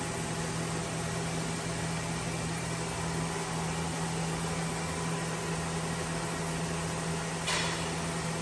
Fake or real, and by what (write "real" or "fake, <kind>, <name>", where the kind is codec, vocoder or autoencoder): real